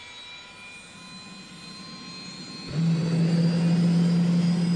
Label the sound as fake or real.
real